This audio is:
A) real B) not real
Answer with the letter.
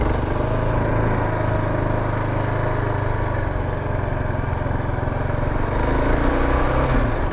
A